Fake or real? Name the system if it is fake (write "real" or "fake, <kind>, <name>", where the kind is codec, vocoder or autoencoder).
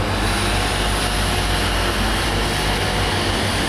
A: real